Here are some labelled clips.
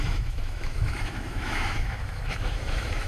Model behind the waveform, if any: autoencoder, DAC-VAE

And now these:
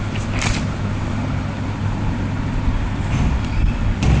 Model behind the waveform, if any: none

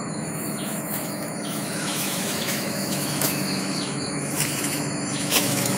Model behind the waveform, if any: autoencoder, DAC-VAE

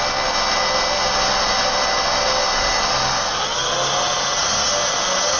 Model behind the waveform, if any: none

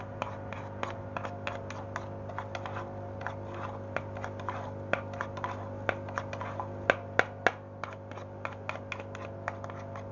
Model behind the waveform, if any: none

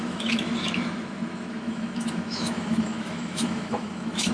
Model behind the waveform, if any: autoencoder, DAC-VAE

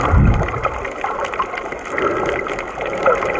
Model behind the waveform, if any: none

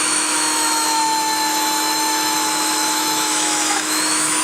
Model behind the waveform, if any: autoencoder, DAC-VAE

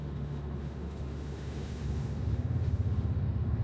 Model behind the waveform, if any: autoencoder, DAC-VAE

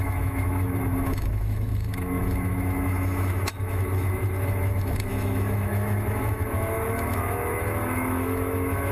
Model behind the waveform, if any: autoencoder, DAC-VAE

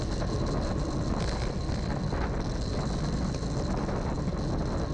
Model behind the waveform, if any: none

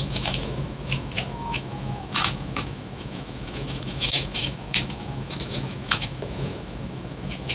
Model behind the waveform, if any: autoencoder, DAC-VAE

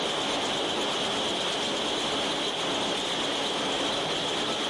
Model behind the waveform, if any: none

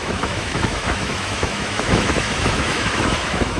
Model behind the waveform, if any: autoencoder, DAC-VAE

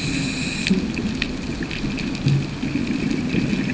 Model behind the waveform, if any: none